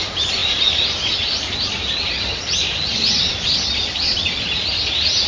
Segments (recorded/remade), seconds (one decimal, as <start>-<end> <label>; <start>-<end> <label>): 0.0-2.9 recorded; 2.9-4.8 remade; 4.8-5.3 recorded